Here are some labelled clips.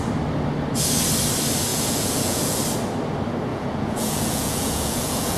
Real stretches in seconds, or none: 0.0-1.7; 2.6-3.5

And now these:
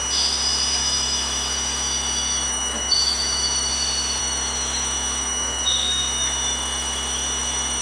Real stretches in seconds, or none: 0.0-0.8; 3.7-4.2

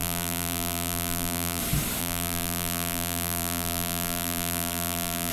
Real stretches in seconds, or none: 1.6-2.0

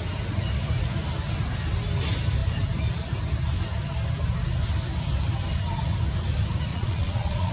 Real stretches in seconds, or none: 0.0-6.7

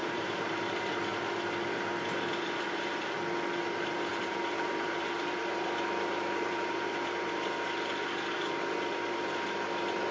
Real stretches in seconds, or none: 0.7-4.1; 6.9-10.1

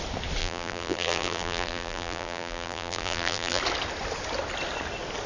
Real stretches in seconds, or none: 0.0-0.4; 3.6-5.3

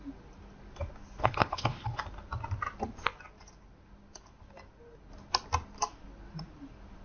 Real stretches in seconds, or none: 0.0-1.2; 2.0-7.0

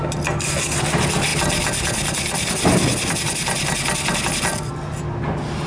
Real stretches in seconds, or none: 0.0-5.7